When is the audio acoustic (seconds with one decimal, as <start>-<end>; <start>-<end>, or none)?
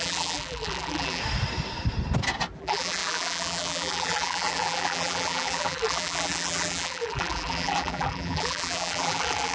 1.2-2.6